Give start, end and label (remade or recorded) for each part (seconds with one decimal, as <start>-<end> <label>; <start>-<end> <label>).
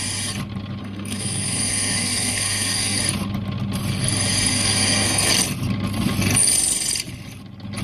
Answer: 0.0-0.8 recorded; 0.8-3.0 remade; 3.0-4.5 recorded; 4.5-5.3 remade; 5.3-7.8 recorded